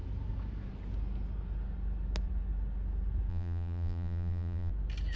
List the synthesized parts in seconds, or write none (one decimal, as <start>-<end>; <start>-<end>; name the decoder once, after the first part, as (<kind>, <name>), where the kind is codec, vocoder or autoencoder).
3.3-4.7 (vocoder, BigVGAN v2)